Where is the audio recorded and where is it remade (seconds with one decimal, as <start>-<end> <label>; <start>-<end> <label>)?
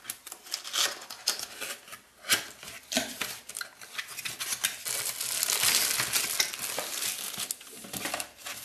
0.0-8.6 recorded